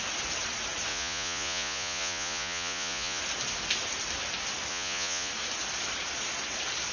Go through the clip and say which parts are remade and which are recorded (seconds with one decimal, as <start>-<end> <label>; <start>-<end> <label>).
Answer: 0.0-0.9 recorded; 0.9-3.2 remade; 3.2-4.7 recorded; 4.7-5.3 remade; 5.3-6.9 recorded

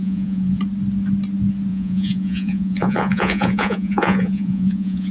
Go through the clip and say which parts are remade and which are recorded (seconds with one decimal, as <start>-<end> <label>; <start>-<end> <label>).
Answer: 0.0-0.6 remade; 0.6-1.7 recorded; 1.7-5.1 remade

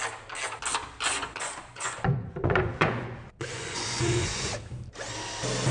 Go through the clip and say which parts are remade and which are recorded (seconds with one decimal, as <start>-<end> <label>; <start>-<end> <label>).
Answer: 0.0-1.1 recorded; 1.1-4.5 remade; 4.5-5.7 recorded

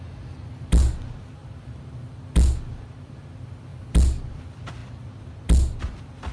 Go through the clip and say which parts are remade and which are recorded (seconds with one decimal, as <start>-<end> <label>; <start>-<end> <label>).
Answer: 0.0-6.3 recorded

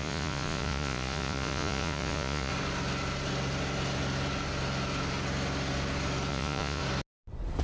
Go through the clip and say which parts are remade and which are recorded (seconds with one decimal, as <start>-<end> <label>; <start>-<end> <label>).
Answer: 0.0-2.5 remade; 2.5-6.3 recorded; 6.3-6.8 remade; 6.8-7.6 recorded